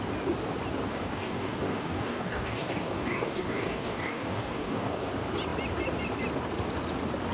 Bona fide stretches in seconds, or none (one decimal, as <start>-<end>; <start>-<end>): 0.0-0.9; 5.1-7.3